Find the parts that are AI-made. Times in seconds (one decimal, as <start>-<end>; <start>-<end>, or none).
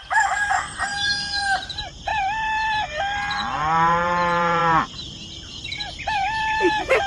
0.0-2.1; 2.9-7.1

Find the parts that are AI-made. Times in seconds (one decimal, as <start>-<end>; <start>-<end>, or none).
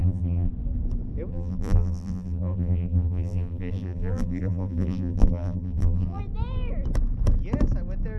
0.0-0.5; 1.3-6.2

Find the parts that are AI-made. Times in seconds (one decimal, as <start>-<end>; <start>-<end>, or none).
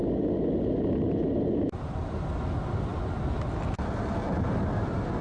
none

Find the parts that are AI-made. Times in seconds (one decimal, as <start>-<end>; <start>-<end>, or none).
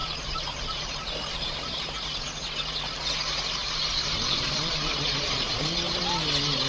0.0-2.3; 3.6-6.0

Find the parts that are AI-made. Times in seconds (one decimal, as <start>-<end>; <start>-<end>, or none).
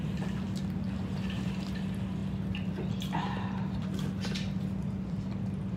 none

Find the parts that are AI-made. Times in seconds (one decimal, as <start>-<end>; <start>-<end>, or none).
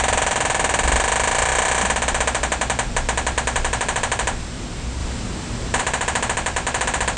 5.0-5.8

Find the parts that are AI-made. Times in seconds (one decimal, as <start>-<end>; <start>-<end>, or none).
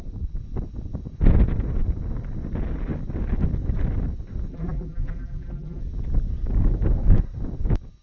4.5-5.8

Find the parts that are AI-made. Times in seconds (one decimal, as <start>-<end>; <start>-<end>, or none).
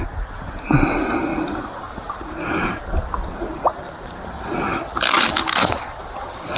1.3-2.1